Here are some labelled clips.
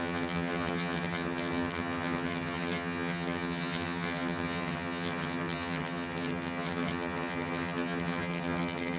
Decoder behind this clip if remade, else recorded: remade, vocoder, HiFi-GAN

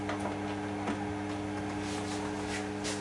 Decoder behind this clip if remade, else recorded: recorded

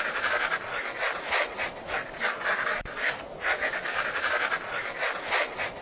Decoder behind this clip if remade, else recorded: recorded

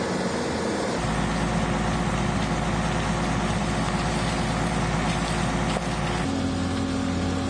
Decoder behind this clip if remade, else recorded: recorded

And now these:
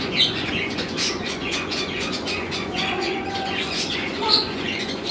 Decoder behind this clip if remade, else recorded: remade, vocoder, Vocos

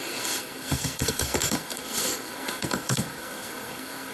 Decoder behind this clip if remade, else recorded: remade, codec, SNAC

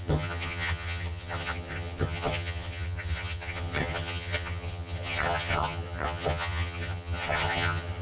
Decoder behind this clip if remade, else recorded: remade, vocoder, HiFi-GAN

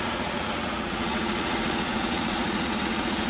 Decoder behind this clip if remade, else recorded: remade, vocoder, Vocos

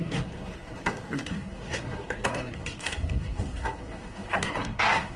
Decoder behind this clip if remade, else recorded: remade, codec, SNAC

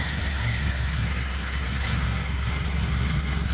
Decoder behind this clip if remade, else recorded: remade, codec, SNAC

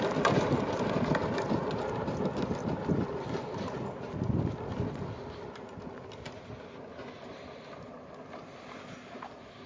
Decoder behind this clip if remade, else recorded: recorded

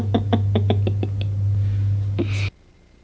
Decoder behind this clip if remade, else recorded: recorded